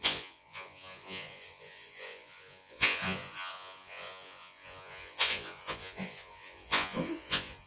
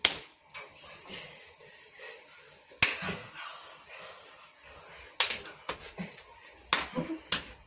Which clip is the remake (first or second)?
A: first